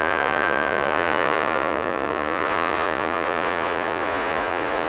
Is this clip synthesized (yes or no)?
yes